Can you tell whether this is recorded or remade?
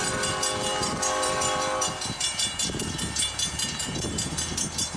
remade